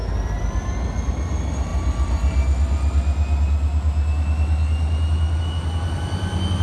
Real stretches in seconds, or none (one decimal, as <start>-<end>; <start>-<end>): 0.0-6.6